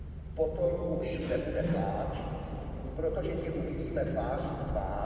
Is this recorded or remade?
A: recorded